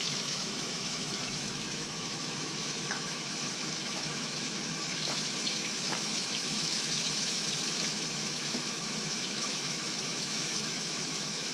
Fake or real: fake